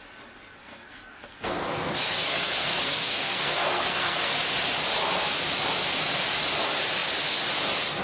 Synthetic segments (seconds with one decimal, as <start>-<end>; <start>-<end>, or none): 0.6-4.3